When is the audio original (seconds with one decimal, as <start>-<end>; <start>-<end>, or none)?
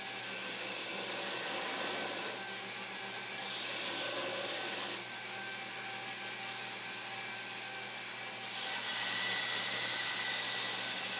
0.0-11.2